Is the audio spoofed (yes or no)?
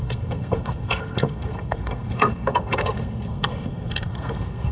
yes